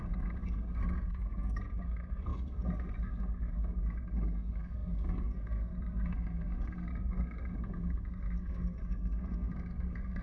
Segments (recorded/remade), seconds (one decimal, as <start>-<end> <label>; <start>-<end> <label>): 0.0-10.2 remade

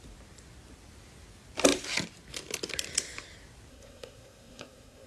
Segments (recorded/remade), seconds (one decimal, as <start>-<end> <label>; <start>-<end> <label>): 0.0-3.7 recorded; 3.7-5.1 remade

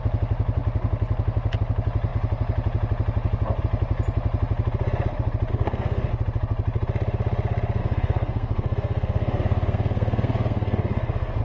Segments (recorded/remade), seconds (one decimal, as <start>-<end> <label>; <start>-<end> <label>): 0.0-5.5 recorded; 5.5-6.1 remade; 6.1-7.8 recorded; 7.8-11.4 remade

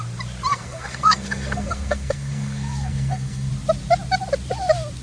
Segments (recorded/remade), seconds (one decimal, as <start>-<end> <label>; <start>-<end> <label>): 0.0-0.5 recorded; 0.5-3.5 remade; 3.5-5.0 recorded